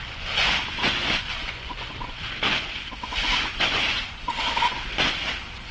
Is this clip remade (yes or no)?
yes